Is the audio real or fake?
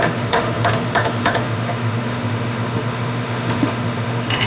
fake